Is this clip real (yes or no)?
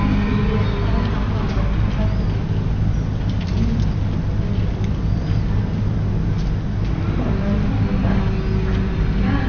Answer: yes